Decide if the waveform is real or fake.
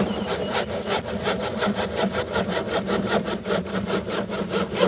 real